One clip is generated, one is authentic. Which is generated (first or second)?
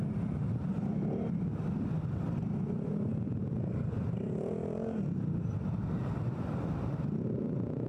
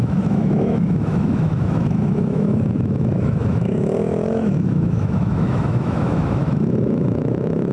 second